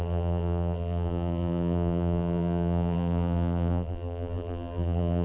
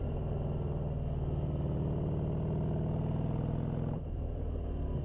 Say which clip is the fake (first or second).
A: first